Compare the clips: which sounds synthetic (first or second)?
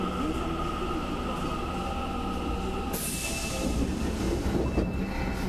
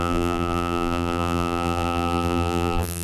second